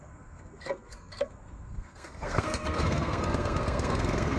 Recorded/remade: remade